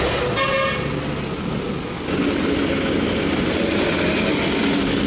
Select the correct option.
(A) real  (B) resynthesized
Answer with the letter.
A